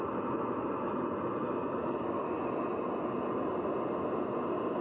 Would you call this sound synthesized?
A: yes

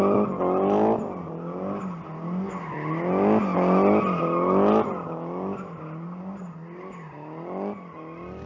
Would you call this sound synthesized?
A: no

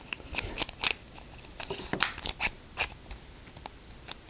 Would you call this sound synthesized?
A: no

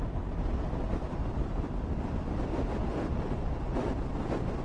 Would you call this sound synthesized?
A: no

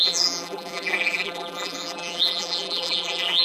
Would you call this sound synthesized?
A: yes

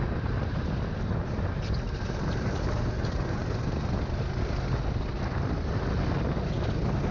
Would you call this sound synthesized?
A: no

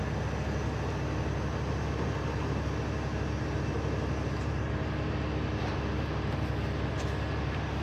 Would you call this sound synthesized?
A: no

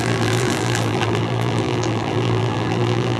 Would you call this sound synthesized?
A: yes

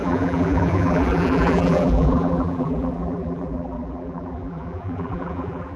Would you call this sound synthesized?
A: yes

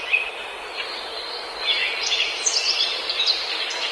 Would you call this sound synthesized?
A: no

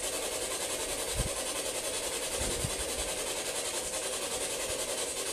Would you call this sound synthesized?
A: no